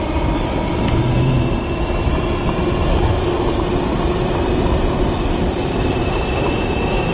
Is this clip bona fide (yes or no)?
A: yes